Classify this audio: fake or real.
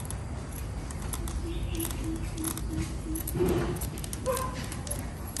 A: real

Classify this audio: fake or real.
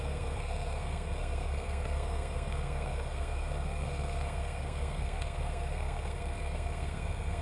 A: fake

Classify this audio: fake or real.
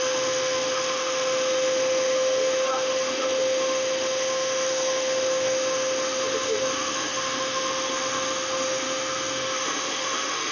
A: fake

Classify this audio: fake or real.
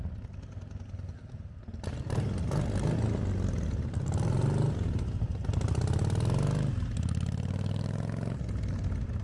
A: real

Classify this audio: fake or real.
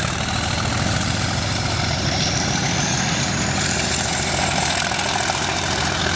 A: fake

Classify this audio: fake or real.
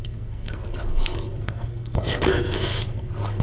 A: fake